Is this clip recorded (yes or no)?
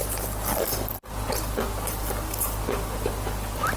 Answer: yes